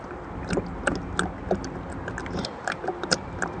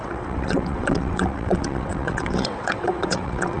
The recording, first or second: first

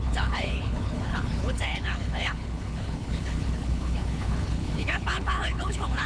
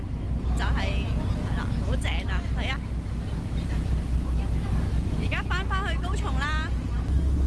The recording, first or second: second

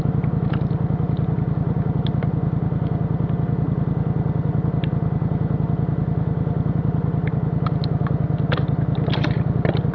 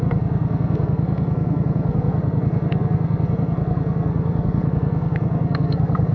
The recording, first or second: first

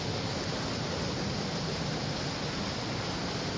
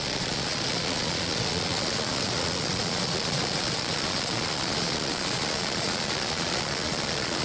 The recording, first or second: first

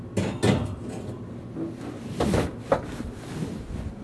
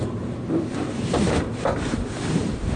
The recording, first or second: first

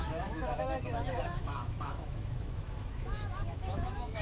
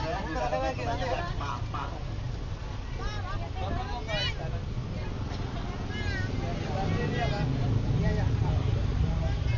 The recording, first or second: second